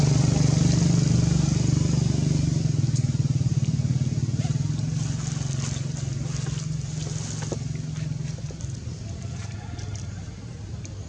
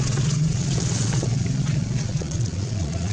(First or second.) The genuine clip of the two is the first